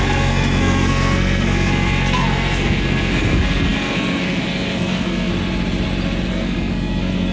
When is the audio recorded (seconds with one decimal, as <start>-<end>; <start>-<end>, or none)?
5.3-6.3